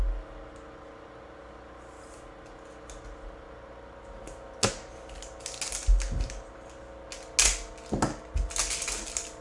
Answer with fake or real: real